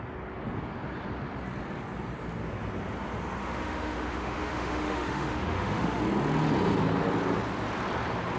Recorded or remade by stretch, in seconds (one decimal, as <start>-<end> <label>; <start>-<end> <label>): 0.0-3.4 recorded; 3.4-6.0 remade; 6.0-8.4 recorded